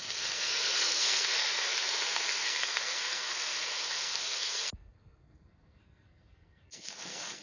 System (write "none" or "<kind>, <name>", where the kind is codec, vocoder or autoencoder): codec, SNAC